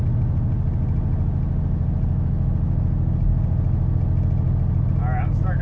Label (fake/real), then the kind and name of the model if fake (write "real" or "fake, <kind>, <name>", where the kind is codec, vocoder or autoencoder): real